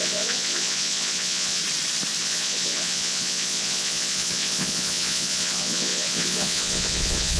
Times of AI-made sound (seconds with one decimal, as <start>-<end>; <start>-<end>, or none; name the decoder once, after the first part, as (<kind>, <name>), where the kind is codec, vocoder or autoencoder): 0.0-1.6 (vocoder, Vocos); 2.2-7.4